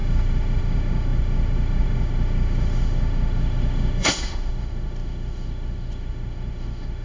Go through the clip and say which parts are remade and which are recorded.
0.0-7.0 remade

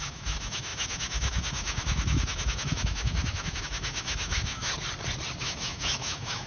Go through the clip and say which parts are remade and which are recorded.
0.0-4.7 remade; 4.7-5.4 recorded; 5.4-6.5 remade

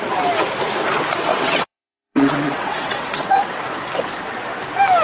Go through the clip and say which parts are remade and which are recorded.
0.0-1.3 recorded; 1.3-3.4 remade; 3.4-5.0 recorded

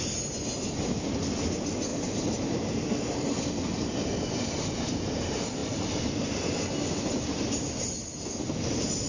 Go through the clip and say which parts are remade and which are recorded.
0.0-1.9 recorded; 1.9-3.5 remade; 3.5-9.1 recorded